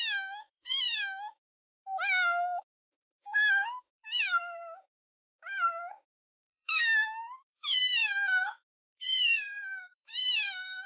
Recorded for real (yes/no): no